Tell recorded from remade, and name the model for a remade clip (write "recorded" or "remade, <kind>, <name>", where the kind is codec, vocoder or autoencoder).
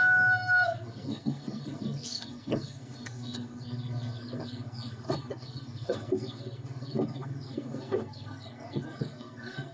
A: remade, codec, SNAC